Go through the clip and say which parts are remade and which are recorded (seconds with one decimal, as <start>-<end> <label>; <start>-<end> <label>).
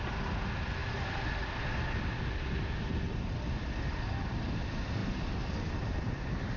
0.0-6.6 recorded